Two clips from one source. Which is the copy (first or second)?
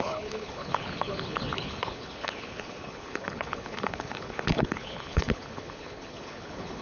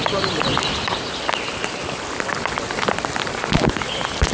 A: first